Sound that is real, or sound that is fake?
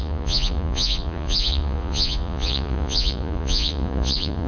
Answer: fake